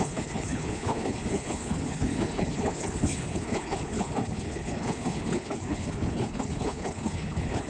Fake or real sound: fake